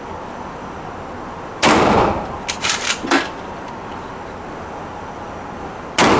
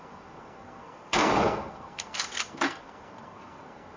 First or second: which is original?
first